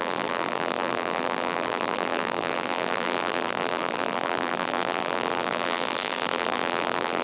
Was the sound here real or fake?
fake